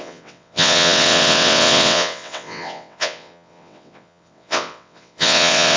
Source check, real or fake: fake